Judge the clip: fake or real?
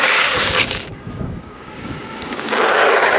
fake